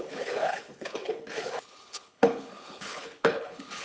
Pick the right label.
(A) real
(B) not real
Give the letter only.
B